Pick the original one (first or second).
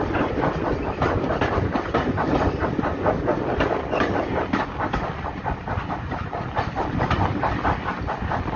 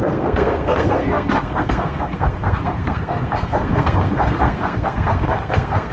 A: first